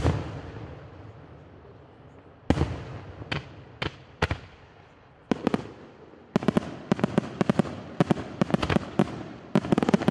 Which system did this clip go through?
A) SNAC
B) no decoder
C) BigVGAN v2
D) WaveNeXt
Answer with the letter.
B